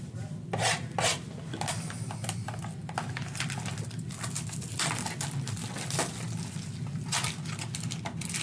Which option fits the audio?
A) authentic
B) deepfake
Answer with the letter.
A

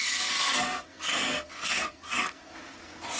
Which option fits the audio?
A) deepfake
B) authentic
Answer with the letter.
A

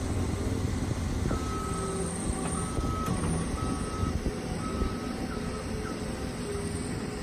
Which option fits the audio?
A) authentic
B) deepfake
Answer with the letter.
A